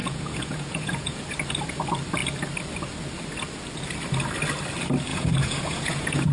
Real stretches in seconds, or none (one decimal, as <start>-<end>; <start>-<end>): 1.2-5.1